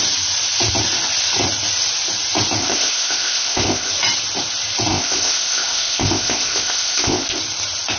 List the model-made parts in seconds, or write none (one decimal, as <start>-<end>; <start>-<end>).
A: 2.6-3.9; 4.9-7.4